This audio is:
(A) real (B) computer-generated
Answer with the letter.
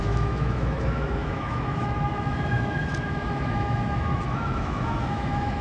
B